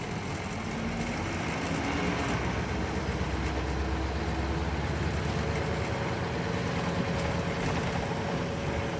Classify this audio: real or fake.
real